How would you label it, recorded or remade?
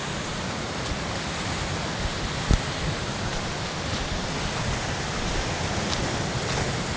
recorded